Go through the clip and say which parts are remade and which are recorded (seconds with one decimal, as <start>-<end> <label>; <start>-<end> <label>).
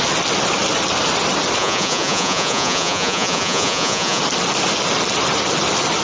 0.0-1.6 recorded; 1.6-4.2 remade; 4.2-6.0 recorded